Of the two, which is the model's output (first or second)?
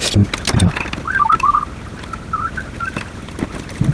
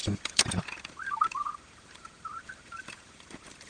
second